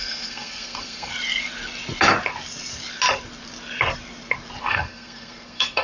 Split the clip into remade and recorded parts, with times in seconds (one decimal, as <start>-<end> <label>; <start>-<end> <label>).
0.0-1.1 remade; 1.1-4.6 recorded; 4.6-5.8 remade